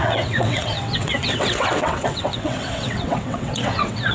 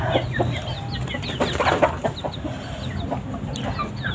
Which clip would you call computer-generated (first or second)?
first